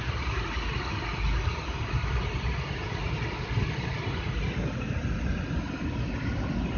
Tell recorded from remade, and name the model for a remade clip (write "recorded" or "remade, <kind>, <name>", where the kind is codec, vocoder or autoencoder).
recorded